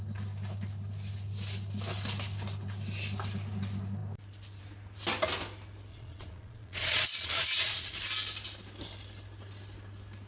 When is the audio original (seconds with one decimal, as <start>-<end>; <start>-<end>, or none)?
0.0-5.9; 7.9-10.3